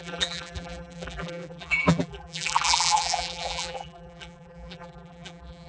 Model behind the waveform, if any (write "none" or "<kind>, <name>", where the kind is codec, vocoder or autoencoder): vocoder, BigVGAN v2